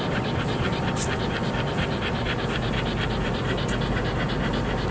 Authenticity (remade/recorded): recorded